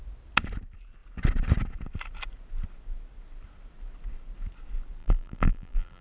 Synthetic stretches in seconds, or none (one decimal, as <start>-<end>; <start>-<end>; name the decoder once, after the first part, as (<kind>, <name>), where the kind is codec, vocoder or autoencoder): 5.0-6.0 (vocoder, BigVGAN v2)